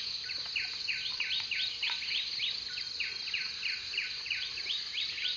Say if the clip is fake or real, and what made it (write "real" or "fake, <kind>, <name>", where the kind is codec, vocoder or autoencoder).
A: real